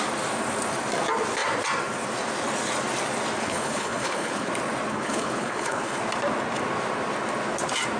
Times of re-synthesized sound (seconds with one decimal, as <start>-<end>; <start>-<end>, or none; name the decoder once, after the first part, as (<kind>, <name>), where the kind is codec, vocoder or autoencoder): 3.4-4.5 (codec, HILCodec); 4.9-6.0